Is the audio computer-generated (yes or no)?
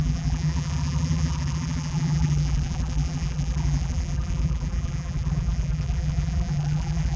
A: yes